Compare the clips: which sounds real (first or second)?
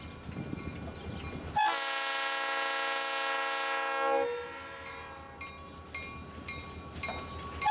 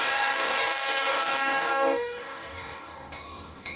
first